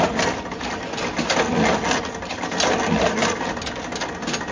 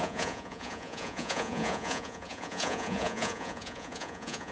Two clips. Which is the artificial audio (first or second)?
second